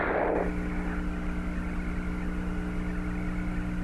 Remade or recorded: recorded